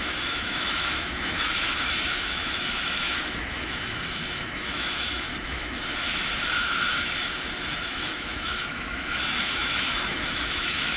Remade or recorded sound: remade